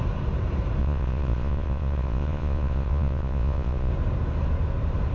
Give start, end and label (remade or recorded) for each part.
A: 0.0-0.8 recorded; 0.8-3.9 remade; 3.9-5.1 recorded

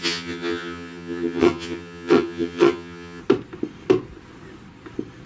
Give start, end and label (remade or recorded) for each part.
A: 0.0-3.2 remade; 3.2-5.3 recorded